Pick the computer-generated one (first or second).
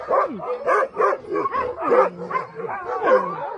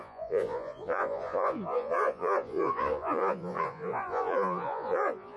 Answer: second